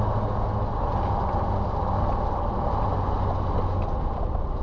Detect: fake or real real